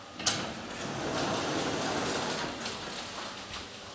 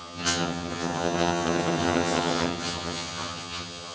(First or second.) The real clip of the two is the first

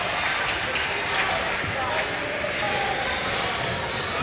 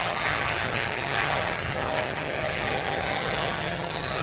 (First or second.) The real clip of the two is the first